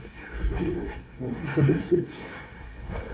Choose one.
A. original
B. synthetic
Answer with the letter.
B